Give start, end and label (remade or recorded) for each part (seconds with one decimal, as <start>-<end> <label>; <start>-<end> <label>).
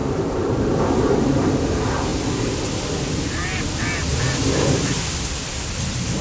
0.0-0.8 remade; 0.8-6.2 recorded